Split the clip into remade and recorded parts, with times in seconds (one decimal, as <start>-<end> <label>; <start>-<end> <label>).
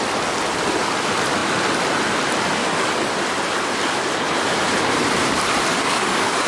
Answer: 0.0-2.6 recorded; 2.6-3.1 remade; 3.1-5.7 recorded; 5.7-6.5 remade